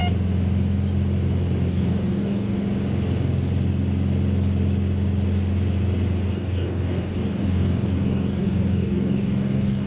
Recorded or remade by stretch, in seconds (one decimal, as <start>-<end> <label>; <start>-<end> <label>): 0.0-1.7 recorded; 1.7-2.5 remade; 2.5-6.3 recorded; 6.3-9.9 remade